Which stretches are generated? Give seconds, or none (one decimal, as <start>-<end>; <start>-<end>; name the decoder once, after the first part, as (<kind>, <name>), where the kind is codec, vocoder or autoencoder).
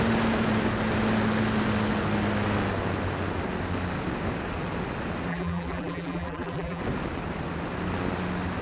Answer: 5.3-6.8 (vocoder, BigVGAN v2)